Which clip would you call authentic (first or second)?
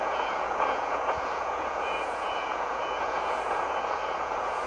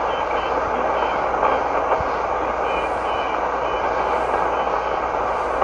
second